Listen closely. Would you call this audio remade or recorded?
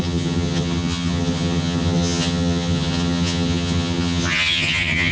remade